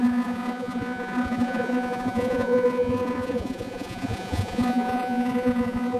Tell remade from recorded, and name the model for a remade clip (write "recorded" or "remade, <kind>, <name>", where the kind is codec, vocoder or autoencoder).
remade, vocoder, Vocos